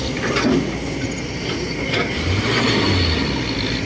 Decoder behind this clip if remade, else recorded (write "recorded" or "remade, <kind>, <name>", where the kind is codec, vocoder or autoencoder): recorded